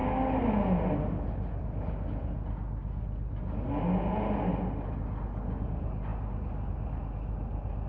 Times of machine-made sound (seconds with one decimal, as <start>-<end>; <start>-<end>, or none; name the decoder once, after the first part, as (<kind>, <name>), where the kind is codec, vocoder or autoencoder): none